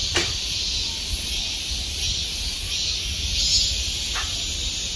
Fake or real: real